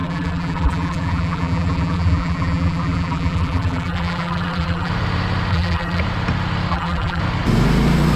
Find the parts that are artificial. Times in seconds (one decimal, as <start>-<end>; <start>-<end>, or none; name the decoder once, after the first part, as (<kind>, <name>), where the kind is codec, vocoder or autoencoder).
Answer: 0.0-4.9 (vocoder, BigVGAN v2); 5.5-6.0; 6.7-7.2